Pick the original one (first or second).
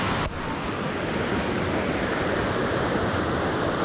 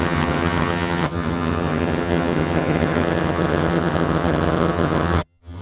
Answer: first